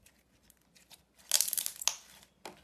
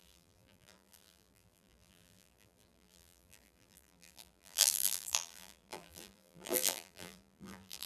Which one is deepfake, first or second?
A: second